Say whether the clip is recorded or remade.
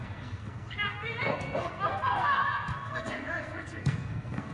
remade